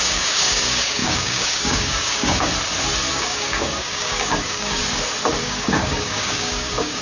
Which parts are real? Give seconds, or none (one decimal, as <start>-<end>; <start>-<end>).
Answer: 2.5-3.1; 4.8-5.4